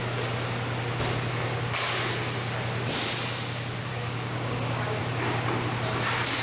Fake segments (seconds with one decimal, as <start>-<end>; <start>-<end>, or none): 3.9-5.0